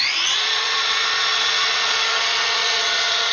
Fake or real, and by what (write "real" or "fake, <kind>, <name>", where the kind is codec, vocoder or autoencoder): fake, vocoder, Vocos